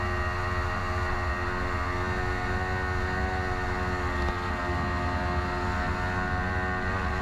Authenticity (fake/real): real